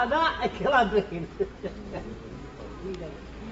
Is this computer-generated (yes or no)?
no